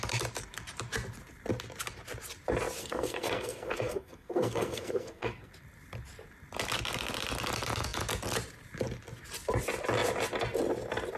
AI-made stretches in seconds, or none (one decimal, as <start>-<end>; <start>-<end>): 2.8-5.5